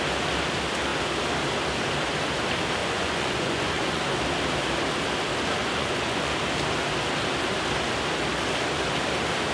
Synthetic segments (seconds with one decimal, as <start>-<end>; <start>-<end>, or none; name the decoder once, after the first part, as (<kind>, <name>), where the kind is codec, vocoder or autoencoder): 2.8-4.0 (vocoder, Vocos); 5.6-6.3